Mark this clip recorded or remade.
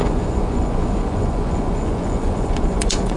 remade